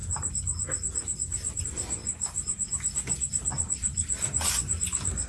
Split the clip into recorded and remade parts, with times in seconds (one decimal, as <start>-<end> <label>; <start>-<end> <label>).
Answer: 0.0-5.3 recorded